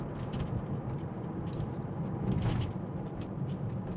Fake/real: real